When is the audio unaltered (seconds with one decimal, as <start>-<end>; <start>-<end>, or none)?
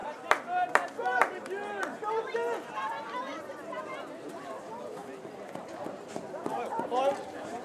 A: 5.0-6.3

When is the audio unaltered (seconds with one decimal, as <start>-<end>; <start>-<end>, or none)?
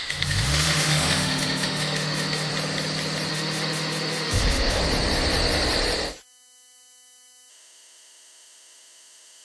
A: 2.5-3.3; 4.8-7.5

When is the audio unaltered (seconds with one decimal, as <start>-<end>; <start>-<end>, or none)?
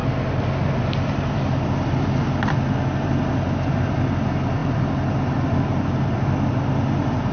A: 0.0-7.3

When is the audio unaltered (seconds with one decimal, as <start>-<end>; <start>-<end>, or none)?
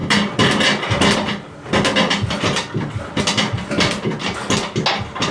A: 0.0-5.3